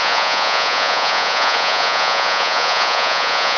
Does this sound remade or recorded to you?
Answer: remade